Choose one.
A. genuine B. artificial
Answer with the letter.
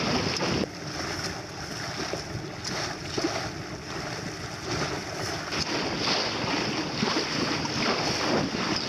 A